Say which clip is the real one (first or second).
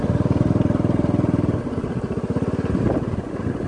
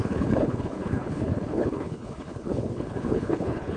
first